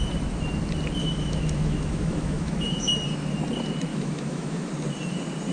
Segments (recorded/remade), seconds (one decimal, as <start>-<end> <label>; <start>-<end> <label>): 0.0-1.0 recorded; 1.0-2.7 remade; 2.7-3.9 recorded; 3.9-4.7 remade; 4.7-5.5 recorded